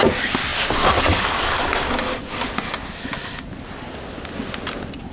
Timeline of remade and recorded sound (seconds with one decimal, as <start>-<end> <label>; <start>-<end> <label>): 0.0-0.5 recorded; 0.5-2.7 remade; 2.7-5.1 recorded